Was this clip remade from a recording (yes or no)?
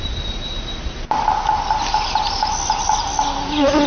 no